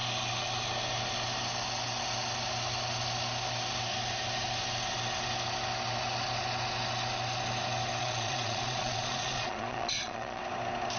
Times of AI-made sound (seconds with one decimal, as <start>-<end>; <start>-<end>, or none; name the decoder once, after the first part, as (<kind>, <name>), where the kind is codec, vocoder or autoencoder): 8.0-10.4 (vocoder, Vocos)